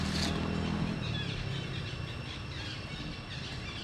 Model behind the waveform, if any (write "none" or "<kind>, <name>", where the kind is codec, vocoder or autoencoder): none